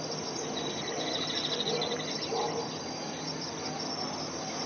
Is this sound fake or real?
real